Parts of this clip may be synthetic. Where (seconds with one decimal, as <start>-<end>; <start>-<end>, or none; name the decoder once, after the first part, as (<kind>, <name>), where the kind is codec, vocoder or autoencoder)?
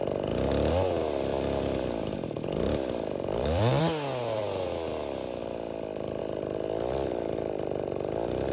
1.3-3.8 (vocoder, BigVGAN v2); 4.4-6.2